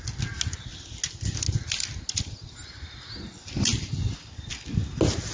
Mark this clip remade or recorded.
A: recorded